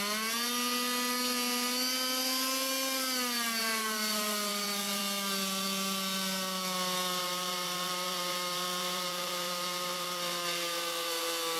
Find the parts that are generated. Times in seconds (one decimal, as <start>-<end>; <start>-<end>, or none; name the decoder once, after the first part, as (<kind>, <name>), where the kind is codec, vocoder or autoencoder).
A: 3.6-5.0 (vocoder, BigVGAN v2); 7.2-11.2